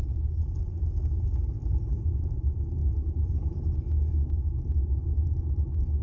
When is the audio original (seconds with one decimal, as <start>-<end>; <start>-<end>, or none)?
0.0-6.0